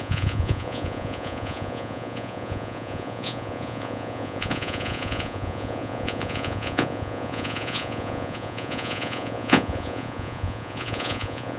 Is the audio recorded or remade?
remade